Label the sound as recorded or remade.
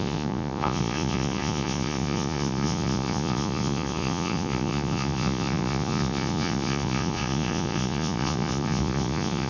remade